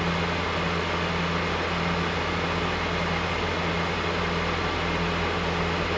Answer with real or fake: real